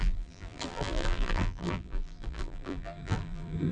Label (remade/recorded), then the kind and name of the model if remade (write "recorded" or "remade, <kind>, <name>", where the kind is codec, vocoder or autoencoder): remade, vocoder, BigVGAN v2